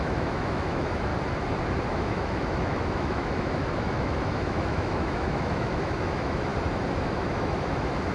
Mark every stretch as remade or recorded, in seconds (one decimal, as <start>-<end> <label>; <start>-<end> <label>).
0.0-1.1 remade; 1.1-1.9 recorded; 1.9-6.5 remade; 6.5-7.0 recorded; 7.0-8.1 remade